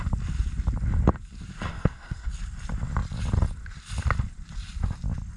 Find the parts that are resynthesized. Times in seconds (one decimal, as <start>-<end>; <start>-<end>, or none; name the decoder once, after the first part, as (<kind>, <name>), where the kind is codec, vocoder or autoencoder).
1.7-2.3 (codec, SNAC)

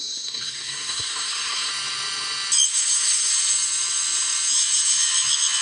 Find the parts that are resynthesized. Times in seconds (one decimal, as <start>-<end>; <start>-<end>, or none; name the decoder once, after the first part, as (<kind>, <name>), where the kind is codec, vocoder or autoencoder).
0.0-1.7 (codec, SNAC); 2.7-3.3